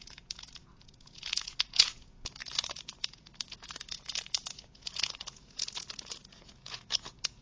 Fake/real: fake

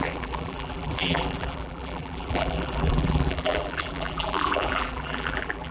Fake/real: fake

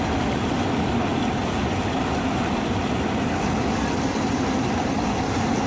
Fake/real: real